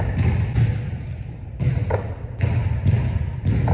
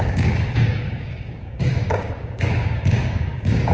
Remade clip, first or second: second